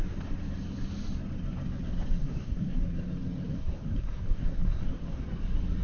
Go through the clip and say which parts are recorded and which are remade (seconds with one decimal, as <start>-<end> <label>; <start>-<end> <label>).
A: 0.0-2.2 recorded; 2.2-2.8 remade; 2.8-3.5 recorded; 3.5-5.2 remade; 5.2-5.8 recorded